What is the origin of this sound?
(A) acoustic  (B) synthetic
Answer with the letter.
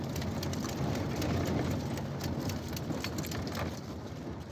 A